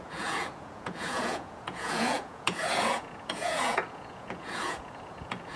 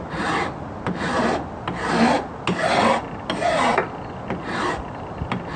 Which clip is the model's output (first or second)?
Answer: first